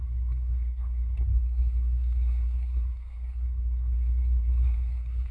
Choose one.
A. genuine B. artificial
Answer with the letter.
B